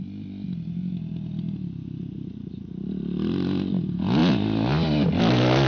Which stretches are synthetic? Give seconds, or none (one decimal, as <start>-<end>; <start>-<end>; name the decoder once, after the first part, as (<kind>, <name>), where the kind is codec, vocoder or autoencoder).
none